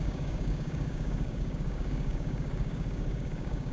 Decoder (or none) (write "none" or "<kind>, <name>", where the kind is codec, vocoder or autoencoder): codec, DAC